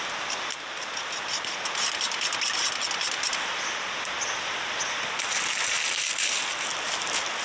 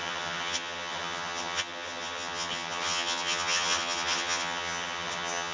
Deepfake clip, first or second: second